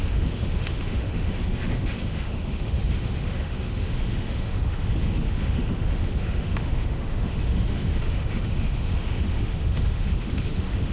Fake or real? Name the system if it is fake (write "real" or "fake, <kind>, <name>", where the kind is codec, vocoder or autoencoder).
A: fake, autoencoder, DAC-VAE